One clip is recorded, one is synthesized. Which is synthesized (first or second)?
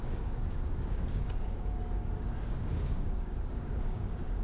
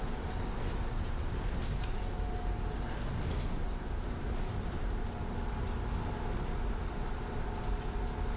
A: first